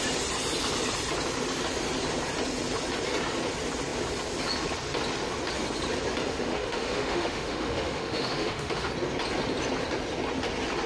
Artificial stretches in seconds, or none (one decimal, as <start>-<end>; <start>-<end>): 6.3-8.9